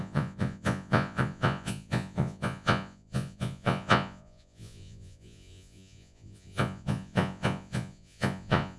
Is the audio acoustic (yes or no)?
no